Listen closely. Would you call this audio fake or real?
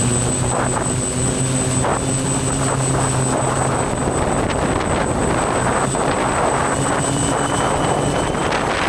real